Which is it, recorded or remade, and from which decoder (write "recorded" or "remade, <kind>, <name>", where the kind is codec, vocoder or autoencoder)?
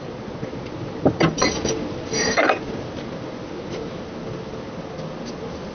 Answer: recorded